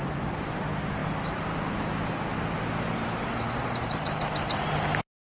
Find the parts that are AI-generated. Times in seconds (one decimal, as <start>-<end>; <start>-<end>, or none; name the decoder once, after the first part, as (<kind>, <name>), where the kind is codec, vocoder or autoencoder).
none